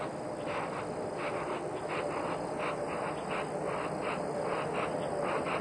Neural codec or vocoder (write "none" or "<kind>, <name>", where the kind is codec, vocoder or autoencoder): none